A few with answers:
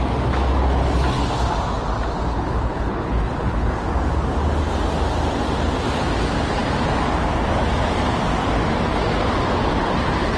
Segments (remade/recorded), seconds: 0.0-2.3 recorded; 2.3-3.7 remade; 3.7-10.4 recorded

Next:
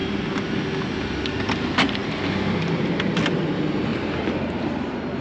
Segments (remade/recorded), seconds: 0.0-3.9 recorded; 3.9-4.4 remade; 4.4-5.2 recorded

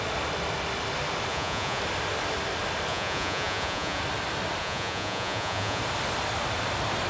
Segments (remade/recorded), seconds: 0.0-1.3 recorded; 1.3-1.8 remade; 1.8-2.9 recorded; 2.9-4.0 remade; 4.0-4.6 recorded; 4.6-5.8 remade; 5.8-7.1 recorded

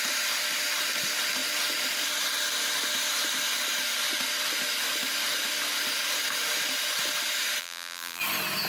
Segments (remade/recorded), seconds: 0.0-7.6 recorded; 7.6-8.2 remade; 8.2-8.7 recorded

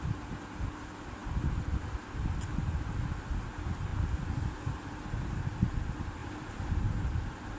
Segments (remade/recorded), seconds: 0.0-6.2 recorded; 6.2-6.7 remade; 6.7-7.6 recorded

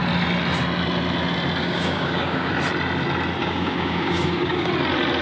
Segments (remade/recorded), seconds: 0.0-1.6 recorded; 1.6-2.5 remade; 2.5-3.4 recorded; 3.4-4.7 remade; 4.7-5.2 recorded

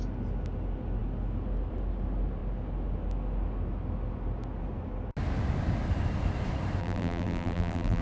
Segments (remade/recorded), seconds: 0.0-6.8 recorded; 6.8-8.0 remade